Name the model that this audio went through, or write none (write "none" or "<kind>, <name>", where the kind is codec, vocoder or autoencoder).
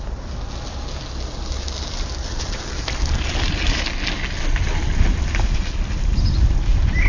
none